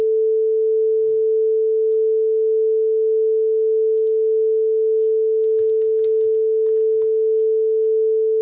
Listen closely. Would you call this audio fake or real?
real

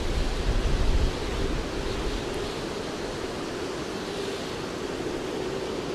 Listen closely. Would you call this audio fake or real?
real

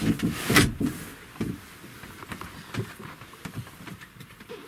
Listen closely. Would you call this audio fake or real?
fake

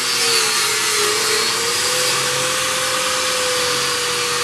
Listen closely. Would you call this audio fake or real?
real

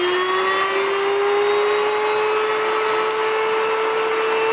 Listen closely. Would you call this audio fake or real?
real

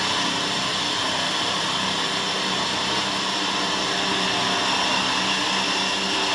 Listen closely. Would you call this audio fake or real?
real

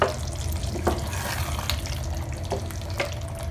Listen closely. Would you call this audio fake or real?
real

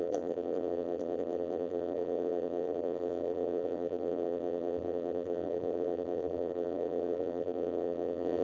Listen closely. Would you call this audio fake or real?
fake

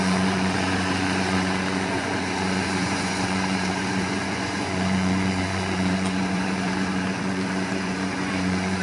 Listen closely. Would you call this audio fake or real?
fake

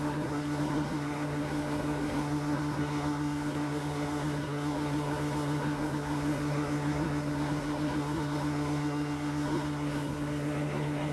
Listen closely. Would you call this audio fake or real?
fake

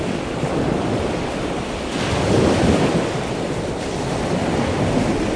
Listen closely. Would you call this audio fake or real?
real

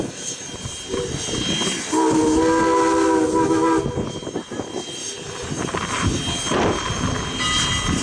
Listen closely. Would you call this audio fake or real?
real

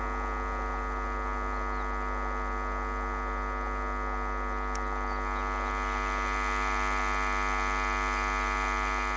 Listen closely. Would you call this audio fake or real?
real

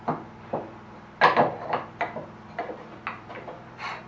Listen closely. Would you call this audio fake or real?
real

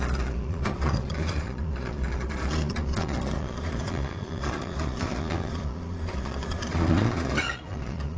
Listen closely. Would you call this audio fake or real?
fake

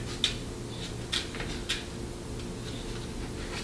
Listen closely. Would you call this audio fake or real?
real